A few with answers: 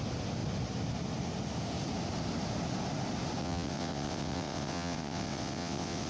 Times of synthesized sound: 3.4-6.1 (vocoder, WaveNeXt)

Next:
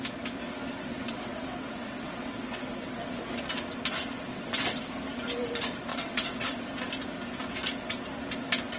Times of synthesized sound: 0.9-3.1 (vocoder, WaveNeXt); 4.3-4.9; 5.9-6.5